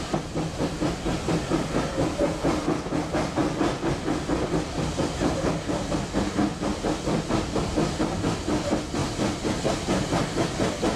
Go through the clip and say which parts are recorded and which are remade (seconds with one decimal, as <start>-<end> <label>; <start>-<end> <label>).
0.0-11.0 recorded